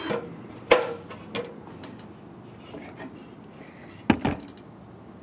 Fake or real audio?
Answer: real